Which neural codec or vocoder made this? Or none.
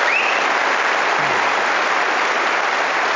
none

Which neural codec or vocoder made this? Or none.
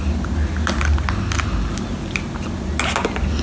none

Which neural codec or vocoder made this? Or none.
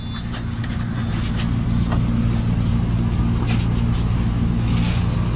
none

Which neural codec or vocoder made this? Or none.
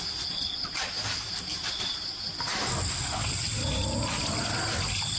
none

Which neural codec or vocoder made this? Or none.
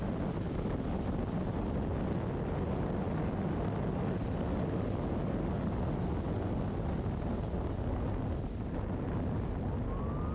none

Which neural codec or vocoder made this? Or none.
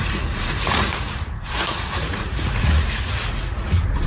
vocoder, Vocos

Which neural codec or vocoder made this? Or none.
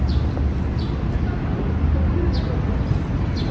none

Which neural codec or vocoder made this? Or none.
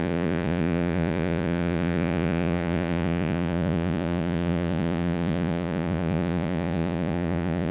vocoder, Vocos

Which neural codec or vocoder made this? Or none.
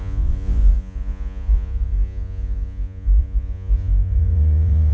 vocoder, Vocos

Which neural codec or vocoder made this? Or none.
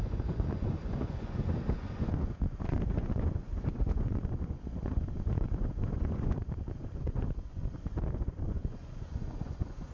vocoder, Vocos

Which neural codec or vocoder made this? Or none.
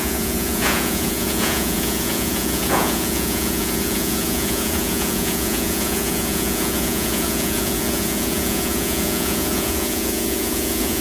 vocoder, Vocos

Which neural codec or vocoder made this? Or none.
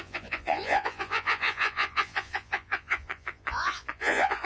vocoder, Vocos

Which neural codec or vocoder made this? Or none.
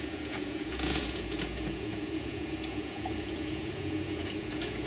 vocoder, Vocos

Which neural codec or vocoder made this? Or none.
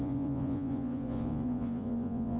vocoder, Vocos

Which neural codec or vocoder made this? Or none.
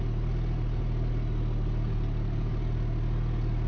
none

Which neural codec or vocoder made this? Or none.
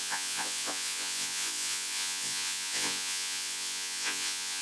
vocoder, Vocos